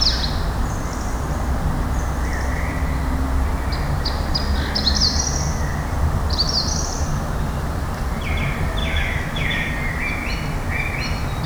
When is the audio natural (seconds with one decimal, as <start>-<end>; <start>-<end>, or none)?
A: 0.0-8.8; 9.7-11.5